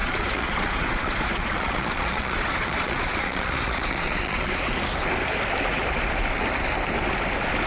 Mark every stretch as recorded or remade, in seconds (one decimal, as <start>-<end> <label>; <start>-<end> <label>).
0.0-4.6 remade; 4.6-7.7 recorded